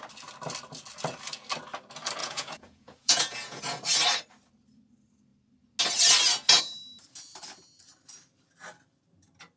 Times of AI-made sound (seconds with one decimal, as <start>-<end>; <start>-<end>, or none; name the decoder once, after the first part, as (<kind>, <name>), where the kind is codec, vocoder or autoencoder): 2.2-3.6 (vocoder, Vocos)